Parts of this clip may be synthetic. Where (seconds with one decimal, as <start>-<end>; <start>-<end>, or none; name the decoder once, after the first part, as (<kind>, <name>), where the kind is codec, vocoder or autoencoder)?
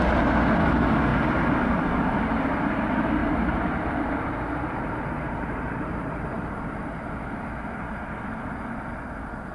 1.1-1.7 (vocoder, BigVGAN v2); 3.2-7.4